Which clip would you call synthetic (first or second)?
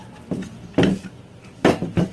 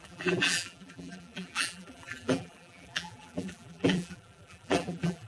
second